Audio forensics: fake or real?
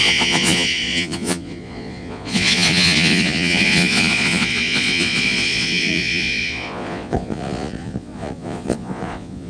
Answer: fake